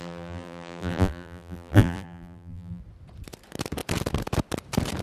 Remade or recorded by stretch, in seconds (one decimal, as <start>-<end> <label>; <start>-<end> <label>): 0.0-2.8 remade; 2.8-5.0 recorded